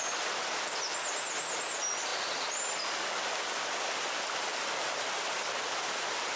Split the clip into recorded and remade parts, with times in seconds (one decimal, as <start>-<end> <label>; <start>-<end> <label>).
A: 0.0-6.4 recorded